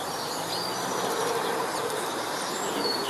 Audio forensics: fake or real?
real